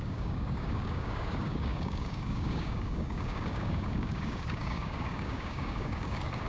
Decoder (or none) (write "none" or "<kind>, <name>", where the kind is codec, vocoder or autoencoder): codec, DAC